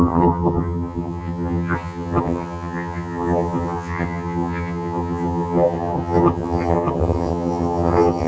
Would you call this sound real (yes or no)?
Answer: no